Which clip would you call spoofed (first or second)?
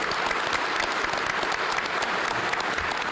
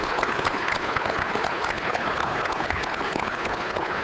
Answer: second